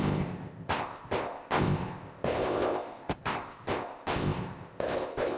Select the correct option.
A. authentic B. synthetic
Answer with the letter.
B